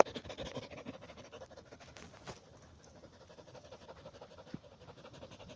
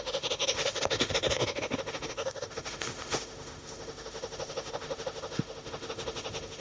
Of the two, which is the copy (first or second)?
second